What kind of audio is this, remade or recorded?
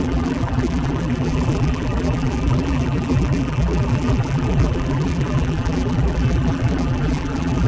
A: remade